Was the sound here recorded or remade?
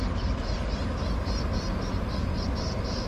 recorded